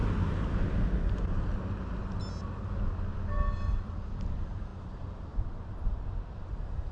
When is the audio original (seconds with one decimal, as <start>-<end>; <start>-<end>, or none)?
1.5-4.2

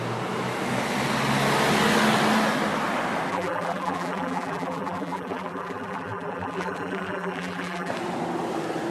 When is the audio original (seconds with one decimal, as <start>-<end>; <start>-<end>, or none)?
0.0-3.3; 7.9-8.9

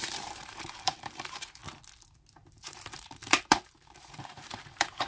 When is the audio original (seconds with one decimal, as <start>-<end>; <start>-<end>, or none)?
1.6-2.5

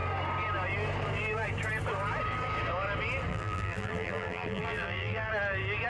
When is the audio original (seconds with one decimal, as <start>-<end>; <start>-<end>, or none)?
0.0-3.3; 5.3-5.9

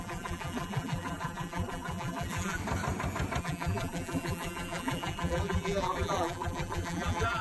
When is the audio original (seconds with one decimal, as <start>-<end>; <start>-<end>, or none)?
2.6-3.4

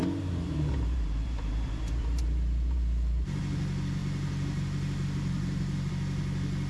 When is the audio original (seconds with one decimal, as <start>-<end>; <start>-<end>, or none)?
3.4-4.0; 5.9-6.7

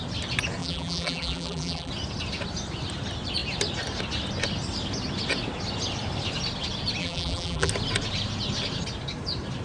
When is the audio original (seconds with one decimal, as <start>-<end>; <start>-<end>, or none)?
0.0-0.6; 1.9-7.0; 7.7-9.6